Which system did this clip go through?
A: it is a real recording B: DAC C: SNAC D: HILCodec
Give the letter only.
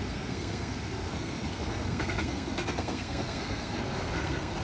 C